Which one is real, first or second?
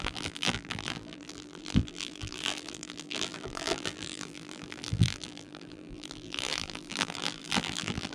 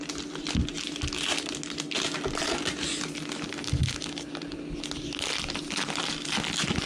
second